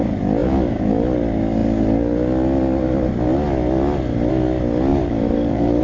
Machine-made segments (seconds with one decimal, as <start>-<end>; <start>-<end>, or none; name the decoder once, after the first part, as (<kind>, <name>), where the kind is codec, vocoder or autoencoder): 0.4-0.9 (vocoder, BigVGAN v2); 4.9-5.8

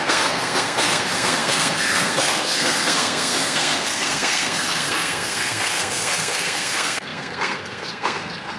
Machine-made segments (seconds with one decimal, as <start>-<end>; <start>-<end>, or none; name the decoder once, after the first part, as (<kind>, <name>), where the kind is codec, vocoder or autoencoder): 0.0-8.6 (codec, SNAC)

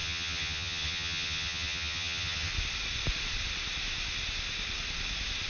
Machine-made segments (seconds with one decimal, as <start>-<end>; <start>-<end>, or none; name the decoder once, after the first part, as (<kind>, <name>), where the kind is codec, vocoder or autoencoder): 0.0-2.5 (vocoder, HiFi-GAN)

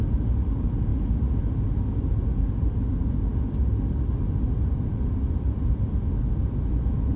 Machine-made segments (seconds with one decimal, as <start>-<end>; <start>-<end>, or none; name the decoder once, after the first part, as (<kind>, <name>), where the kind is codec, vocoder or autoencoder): none

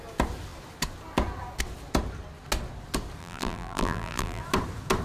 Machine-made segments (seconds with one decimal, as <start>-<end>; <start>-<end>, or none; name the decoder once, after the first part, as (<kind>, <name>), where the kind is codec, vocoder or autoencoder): 3.2-4.4 (vocoder, BigVGAN v2)